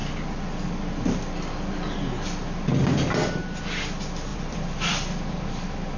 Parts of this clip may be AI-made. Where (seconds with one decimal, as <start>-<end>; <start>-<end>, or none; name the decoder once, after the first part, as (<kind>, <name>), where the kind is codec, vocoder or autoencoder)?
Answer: 4.3-5.5 (vocoder, BigVGAN v2)